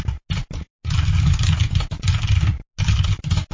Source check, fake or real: real